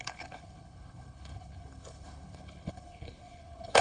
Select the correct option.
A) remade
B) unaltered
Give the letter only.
A